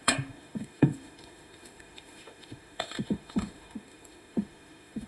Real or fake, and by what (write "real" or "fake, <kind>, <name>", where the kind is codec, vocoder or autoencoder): fake, autoencoder, DAC-VAE